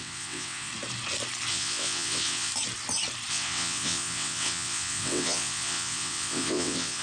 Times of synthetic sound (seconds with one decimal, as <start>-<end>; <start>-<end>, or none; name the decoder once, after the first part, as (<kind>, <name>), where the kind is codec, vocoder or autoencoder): 0.0-0.7 (vocoder, WaveNeXt); 1.5-2.5; 3.3-7.0